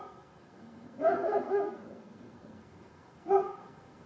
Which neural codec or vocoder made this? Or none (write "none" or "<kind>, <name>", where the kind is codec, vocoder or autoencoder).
codec, SNAC